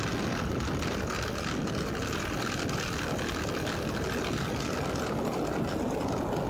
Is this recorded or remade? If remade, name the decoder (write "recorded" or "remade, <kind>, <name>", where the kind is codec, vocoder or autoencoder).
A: recorded